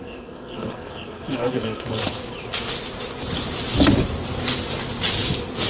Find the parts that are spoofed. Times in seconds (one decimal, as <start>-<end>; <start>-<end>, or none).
0.0-2.0